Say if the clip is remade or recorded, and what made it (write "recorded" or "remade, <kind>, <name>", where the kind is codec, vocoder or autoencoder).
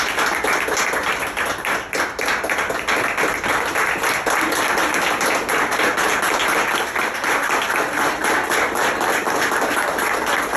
recorded